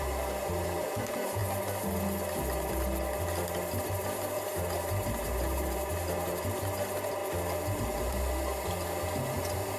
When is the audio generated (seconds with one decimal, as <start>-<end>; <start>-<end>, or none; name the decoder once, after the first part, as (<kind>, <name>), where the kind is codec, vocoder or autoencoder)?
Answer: 0.0-1.4 (vocoder, BigVGAN v2); 3.8-7.2; 7.7-9.8